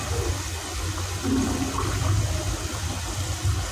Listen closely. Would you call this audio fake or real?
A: real